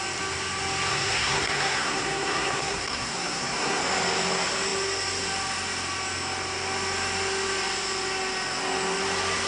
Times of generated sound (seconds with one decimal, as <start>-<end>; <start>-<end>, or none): 0.9-3.8

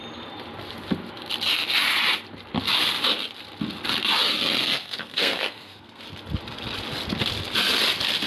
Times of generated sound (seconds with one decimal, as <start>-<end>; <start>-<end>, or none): 4.6-6.0

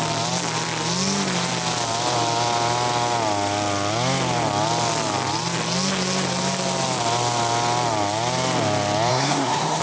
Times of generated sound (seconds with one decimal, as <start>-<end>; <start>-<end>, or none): 9.1-9.8

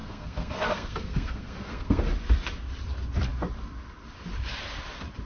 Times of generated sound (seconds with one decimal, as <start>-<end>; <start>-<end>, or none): 0.0-2.0

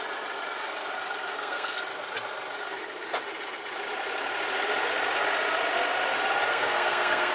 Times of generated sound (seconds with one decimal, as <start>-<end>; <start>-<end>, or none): 1.3-1.8; 6.5-7.3